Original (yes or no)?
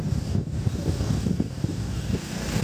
no